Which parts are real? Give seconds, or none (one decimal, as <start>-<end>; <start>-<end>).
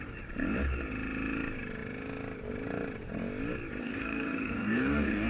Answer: 0.0-3.8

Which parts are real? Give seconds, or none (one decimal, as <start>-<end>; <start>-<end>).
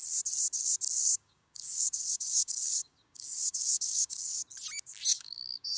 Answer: 0.0-0.9; 4.4-5.1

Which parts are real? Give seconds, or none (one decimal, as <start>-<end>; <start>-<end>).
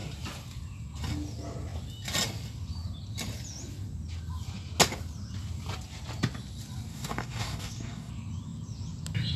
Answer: 0.0-6.9; 8.1-9.4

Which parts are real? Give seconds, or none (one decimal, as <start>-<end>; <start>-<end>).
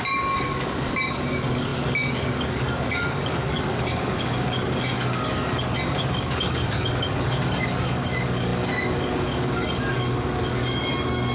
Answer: none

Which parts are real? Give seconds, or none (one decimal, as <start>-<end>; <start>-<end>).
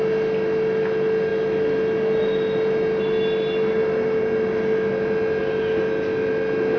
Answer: 0.0-6.8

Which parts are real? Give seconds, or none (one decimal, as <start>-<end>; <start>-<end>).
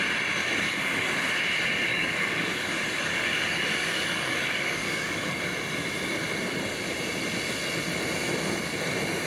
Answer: 0.0-0.4; 1.1-1.9; 5.4-9.3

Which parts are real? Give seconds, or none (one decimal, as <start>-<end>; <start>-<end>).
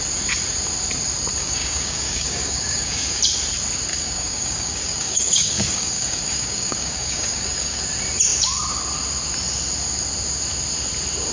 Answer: 0.0-1.4; 3.2-3.9; 7.8-11.3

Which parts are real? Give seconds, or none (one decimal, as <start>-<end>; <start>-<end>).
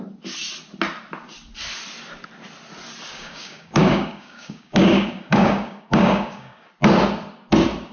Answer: 0.0-3.1; 6.7-7.9